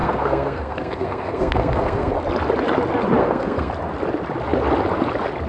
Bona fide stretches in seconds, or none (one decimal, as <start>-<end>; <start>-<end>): 2.1-3.2; 3.7-5.5

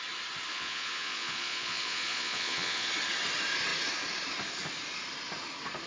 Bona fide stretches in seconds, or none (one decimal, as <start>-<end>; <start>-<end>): 0.0-0.5; 2.9-5.9

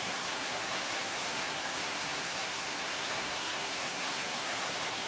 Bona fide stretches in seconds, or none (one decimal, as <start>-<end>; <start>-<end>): none

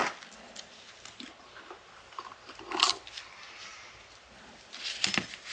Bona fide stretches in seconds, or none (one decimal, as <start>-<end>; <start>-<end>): 0.0-5.5